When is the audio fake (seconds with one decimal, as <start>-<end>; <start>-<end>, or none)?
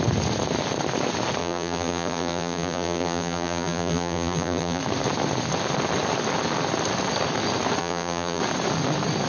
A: 1.4-4.8; 7.8-8.4